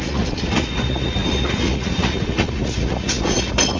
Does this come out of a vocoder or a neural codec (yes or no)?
yes